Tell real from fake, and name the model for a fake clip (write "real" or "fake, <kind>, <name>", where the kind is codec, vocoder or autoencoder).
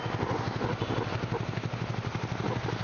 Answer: real